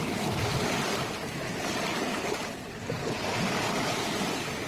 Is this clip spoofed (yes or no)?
no